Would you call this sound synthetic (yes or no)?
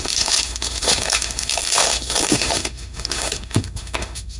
yes